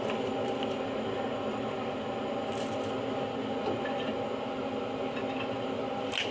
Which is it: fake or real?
real